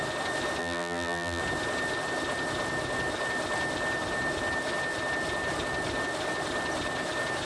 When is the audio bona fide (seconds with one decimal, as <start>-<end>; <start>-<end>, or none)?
0.0-0.6; 1.4-7.5